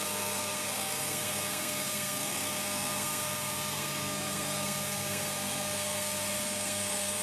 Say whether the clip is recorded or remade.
remade